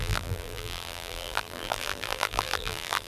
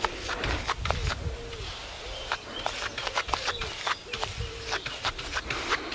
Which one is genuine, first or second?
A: second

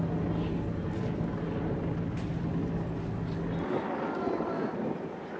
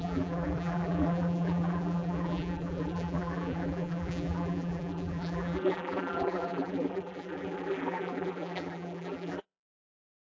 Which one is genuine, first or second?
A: first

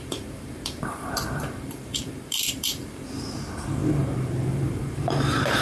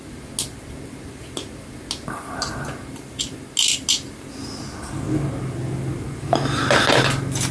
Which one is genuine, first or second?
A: second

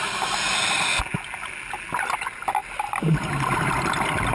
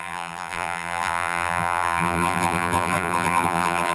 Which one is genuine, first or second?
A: first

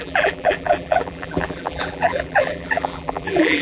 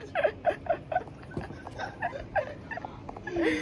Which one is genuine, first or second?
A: second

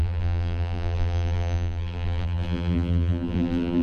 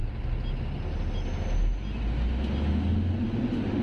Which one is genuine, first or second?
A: second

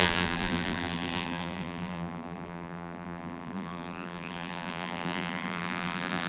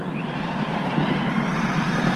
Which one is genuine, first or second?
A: second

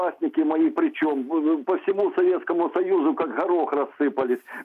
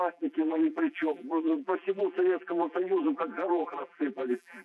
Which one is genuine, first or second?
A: first